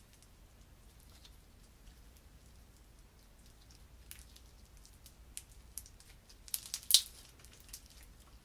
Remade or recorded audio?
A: recorded